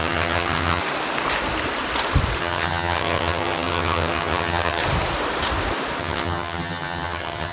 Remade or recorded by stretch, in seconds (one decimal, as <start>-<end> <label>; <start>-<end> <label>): 0.0-0.8 remade; 0.8-2.4 recorded; 2.4-4.8 remade; 4.8-6.0 recorded; 6.0-7.5 remade